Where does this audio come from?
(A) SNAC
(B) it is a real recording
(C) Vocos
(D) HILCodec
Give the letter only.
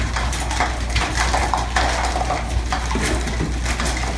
B